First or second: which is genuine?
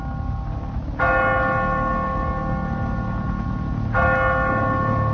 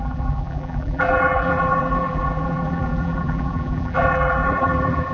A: first